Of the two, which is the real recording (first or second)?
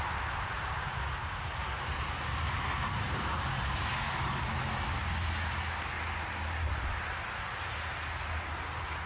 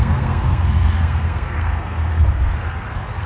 first